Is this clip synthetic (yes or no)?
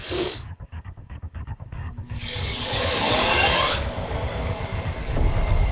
yes